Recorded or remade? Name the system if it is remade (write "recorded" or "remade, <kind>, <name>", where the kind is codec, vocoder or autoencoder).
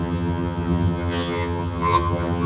remade, vocoder, HiFi-GAN